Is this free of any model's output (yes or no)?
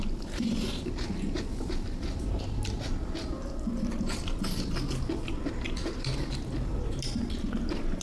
yes